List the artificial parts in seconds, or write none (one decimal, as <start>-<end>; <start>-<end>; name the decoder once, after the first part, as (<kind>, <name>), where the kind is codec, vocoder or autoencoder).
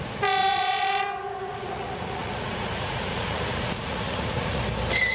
0.4-1.0 (vocoder, Vocos); 1.5-4.6